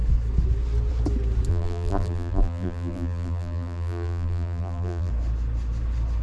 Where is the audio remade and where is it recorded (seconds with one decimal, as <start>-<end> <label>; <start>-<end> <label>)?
0.0-1.5 recorded; 1.5-5.1 remade; 5.1-6.2 recorded